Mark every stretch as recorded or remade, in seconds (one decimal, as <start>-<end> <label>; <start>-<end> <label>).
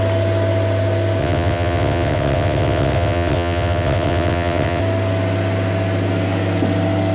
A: 0.0-1.2 recorded; 1.2-4.8 remade; 4.8-7.1 recorded